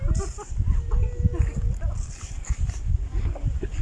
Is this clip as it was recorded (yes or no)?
yes